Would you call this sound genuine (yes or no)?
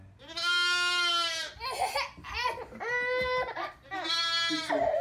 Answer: yes